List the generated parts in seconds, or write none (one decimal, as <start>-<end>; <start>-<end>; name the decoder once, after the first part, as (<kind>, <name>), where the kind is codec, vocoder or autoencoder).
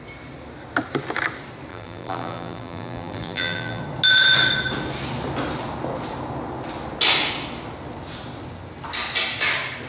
1.7-3.8 (vocoder, BigVGAN v2)